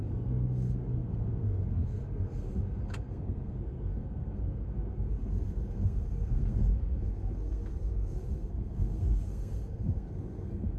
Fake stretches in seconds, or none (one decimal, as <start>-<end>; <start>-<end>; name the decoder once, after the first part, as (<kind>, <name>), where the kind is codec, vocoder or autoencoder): 0.0-10.8 (codec, SNAC)